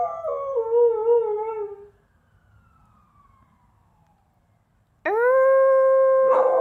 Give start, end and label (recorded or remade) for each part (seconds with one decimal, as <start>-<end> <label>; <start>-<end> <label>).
0.0-6.6 recorded